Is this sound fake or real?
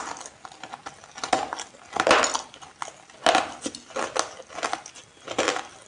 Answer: real